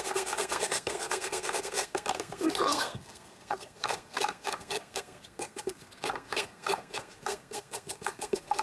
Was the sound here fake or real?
fake